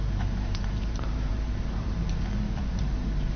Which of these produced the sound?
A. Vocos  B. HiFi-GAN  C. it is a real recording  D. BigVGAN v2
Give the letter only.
D